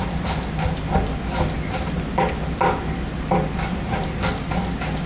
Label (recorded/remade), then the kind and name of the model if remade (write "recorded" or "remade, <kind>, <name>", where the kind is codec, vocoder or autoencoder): recorded